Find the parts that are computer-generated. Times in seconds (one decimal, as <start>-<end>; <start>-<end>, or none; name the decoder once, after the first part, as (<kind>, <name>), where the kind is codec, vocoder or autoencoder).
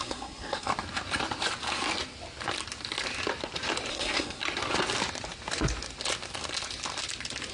0.0-0.7 (codec, SNAC); 3.9-4.4